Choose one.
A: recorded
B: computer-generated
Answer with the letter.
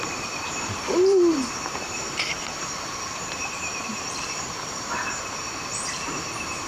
B